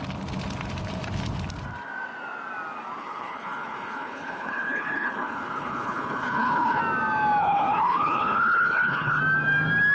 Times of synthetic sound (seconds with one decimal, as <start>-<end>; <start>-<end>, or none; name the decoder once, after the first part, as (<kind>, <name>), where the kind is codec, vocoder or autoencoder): 3.0-6.8 (codec, HILCodec); 7.4-9.2